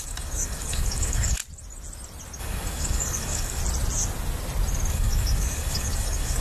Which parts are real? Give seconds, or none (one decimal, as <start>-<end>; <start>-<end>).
1.4-2.4; 3.6-4.9